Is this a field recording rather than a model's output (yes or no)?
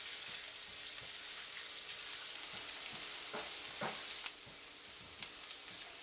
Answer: yes